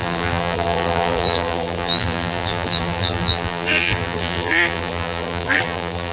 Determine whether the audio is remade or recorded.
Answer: remade